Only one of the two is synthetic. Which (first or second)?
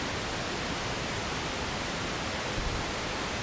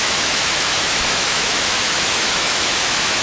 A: second